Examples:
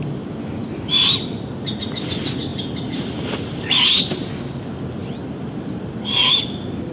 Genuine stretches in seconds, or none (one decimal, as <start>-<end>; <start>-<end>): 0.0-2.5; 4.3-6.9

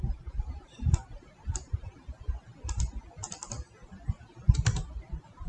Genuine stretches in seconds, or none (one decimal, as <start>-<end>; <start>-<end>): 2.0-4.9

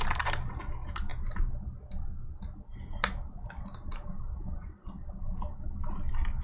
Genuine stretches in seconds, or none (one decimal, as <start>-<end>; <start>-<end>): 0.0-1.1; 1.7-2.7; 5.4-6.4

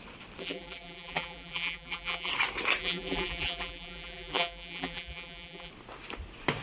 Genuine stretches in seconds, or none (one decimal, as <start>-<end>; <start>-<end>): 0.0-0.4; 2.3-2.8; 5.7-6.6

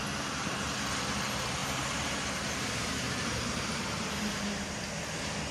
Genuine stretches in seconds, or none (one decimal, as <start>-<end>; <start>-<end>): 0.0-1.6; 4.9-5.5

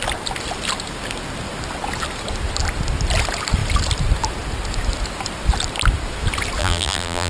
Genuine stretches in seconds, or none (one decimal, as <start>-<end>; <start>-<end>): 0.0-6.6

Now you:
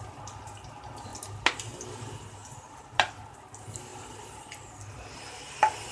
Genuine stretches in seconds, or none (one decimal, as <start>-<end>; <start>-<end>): 0.0-2.4; 3.1-3.9; 4.7-5.9